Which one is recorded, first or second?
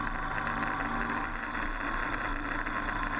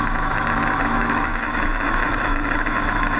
first